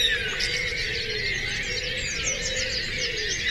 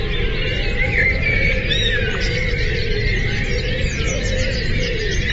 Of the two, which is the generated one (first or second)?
second